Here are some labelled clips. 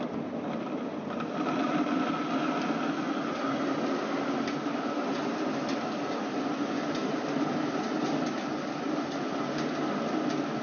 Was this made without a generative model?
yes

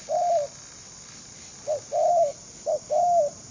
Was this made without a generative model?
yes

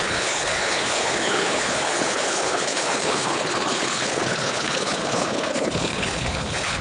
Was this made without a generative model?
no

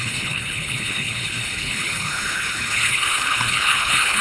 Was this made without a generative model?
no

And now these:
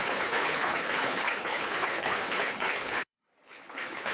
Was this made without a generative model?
no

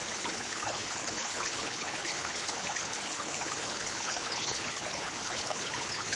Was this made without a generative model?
no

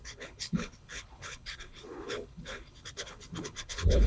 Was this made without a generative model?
no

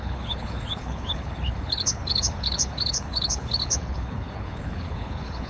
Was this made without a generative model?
no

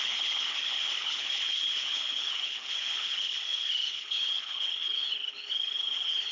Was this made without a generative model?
no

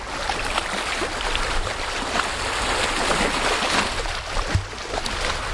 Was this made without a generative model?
yes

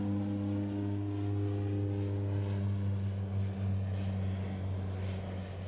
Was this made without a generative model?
yes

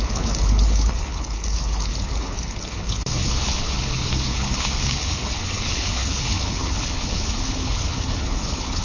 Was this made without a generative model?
no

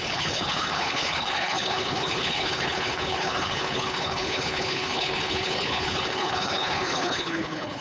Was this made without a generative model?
no